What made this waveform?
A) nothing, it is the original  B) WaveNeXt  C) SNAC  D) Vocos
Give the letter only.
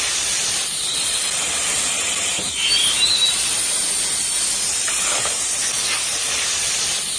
A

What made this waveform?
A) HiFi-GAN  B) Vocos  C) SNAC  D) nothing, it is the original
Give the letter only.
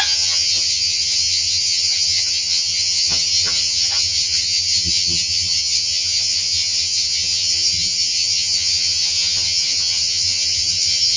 A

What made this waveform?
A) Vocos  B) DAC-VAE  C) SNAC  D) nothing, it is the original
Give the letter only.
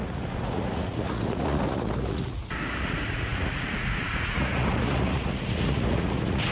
A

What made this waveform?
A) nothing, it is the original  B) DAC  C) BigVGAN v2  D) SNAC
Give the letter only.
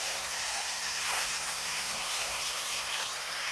D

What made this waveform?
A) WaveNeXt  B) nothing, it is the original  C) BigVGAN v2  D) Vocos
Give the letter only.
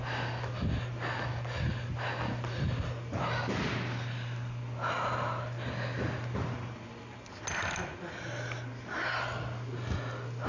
B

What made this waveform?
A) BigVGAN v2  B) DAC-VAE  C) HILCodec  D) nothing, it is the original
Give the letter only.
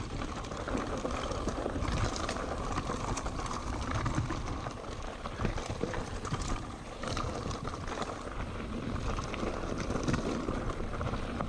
A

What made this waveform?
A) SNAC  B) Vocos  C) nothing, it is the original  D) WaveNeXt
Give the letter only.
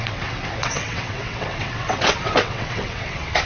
D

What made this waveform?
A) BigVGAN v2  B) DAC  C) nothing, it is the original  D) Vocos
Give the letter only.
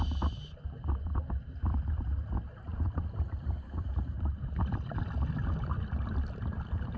C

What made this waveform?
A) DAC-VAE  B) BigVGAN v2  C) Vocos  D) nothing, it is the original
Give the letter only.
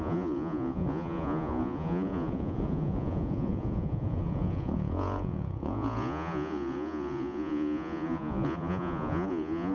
C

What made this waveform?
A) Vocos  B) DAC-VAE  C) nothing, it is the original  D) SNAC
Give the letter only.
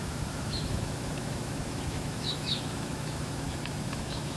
B